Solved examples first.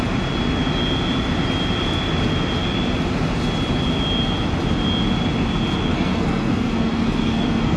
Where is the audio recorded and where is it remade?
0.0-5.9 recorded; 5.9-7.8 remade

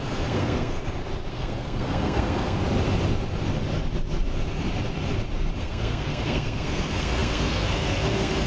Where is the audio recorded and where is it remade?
0.0-0.8 remade; 0.8-1.3 recorded; 1.3-2.6 remade; 2.6-5.6 recorded; 5.6-8.5 remade

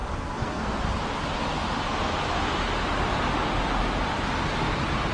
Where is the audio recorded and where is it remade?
0.0-0.8 remade; 0.8-5.1 recorded

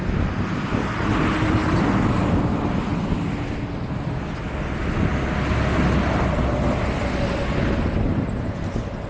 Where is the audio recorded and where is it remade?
0.0-9.1 recorded

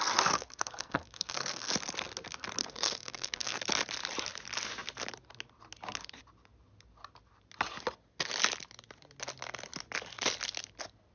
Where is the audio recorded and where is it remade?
0.0-1.7 remade; 1.7-2.6 recorded; 2.6-3.6 remade; 3.6-11.1 recorded

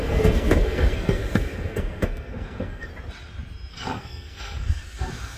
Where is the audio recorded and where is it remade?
0.0-2.9 remade; 2.9-3.7 recorded; 3.7-5.4 remade

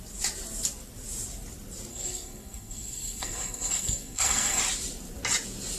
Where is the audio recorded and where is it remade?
0.0-1.9 recorded; 1.9-4.6 remade; 4.6-5.8 recorded

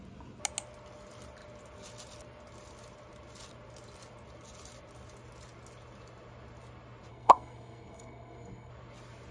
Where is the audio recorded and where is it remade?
0.0-7.1 recorded; 7.1-8.7 remade; 8.7-9.3 recorded